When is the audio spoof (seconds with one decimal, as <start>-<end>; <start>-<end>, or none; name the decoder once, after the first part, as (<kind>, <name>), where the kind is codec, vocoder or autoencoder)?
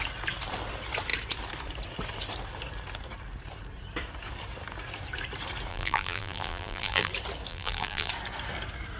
5.7-7.1 (vocoder, BigVGAN v2); 7.5-8.1